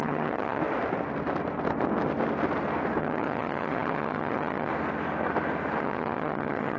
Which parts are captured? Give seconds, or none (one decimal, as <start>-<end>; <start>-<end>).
0.6-3.0; 4.7-5.8